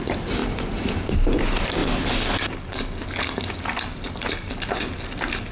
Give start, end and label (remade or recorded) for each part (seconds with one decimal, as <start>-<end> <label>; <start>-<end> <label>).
0.0-0.4 recorded; 0.4-1.1 remade; 1.1-5.5 recorded